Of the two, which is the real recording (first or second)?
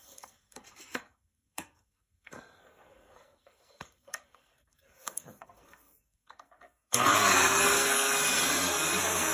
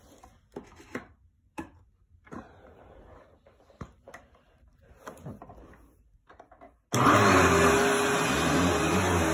second